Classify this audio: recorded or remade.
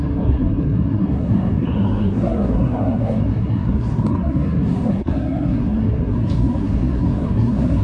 remade